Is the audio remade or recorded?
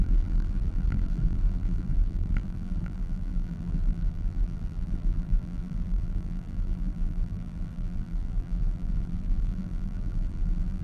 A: remade